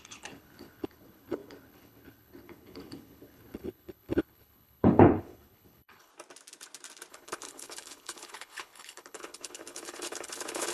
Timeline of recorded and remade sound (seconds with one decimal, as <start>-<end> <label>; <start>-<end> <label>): 0.0-6.1 remade; 6.1-7.1 recorded; 7.1-10.7 remade